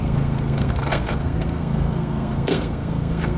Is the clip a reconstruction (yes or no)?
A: yes